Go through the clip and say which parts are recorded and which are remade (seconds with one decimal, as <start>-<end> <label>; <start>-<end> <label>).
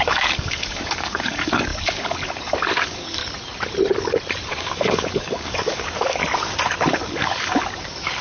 0.0-3.2 remade; 3.2-4.5 recorded; 4.5-6.2 remade; 6.2-6.9 recorded; 6.9-8.2 remade